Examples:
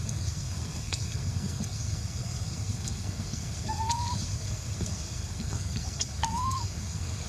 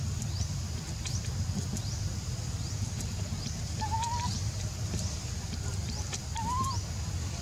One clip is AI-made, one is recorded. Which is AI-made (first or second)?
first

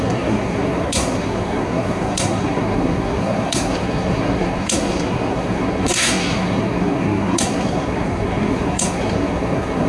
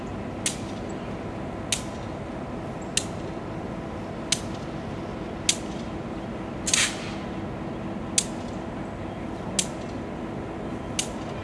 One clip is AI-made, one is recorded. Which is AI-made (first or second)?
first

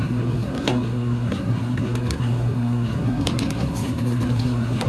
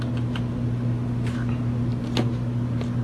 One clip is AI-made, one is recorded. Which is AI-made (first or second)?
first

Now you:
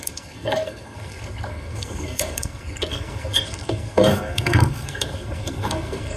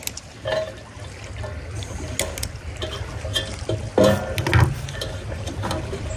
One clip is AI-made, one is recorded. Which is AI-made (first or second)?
first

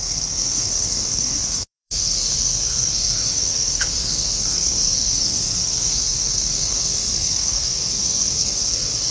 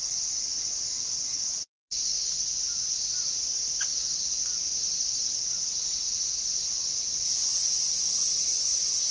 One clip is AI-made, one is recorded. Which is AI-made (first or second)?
first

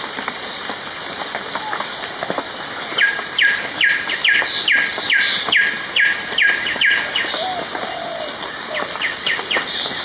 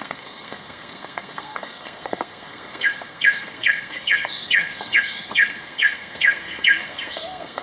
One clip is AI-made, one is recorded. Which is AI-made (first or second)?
second